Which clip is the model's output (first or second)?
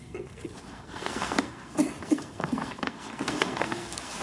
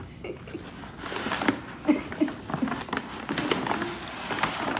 first